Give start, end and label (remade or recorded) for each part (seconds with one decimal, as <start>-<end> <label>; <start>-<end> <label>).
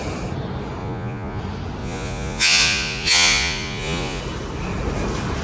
0.0-0.8 recorded; 0.8-1.4 remade; 1.4-1.8 recorded; 1.8-4.2 remade; 4.2-5.4 recorded